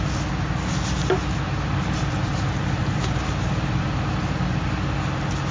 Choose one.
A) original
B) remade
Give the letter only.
A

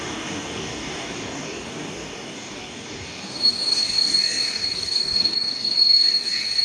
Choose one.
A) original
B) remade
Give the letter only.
B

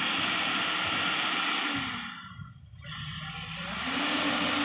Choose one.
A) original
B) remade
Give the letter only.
A